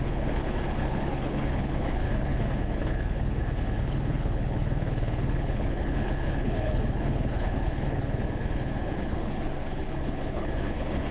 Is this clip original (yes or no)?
no